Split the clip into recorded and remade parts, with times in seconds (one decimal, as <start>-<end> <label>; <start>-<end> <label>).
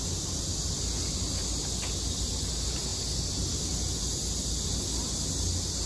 0.0-5.9 recorded